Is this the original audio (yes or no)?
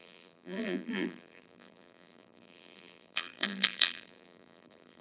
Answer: no